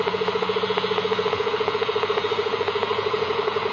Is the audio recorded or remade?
remade